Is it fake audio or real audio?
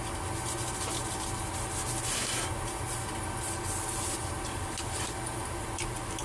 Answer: real